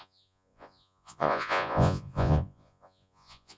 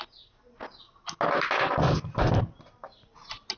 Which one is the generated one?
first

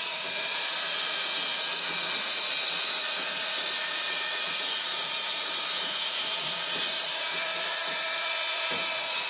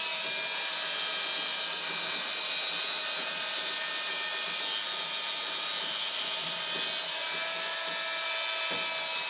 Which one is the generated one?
first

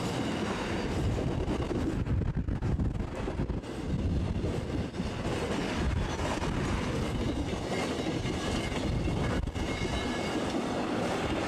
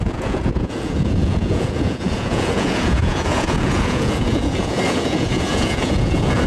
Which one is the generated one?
second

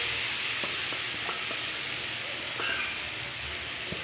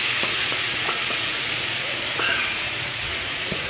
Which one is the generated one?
second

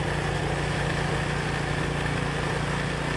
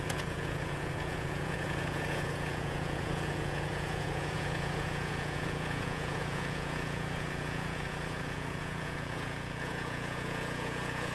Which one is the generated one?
second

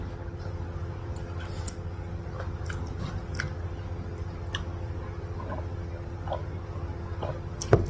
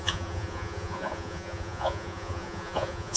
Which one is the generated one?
second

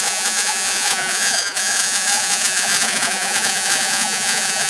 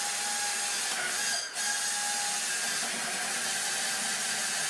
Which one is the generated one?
first